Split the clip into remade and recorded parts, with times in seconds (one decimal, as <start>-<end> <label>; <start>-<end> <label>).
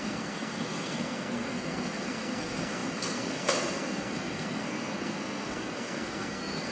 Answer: 0.0-6.7 remade